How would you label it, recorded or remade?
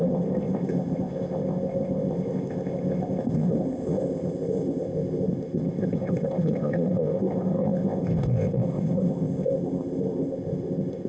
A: remade